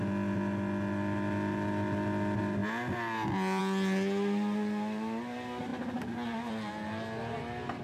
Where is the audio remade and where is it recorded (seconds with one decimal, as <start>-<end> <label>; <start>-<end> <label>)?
0.0-7.8 recorded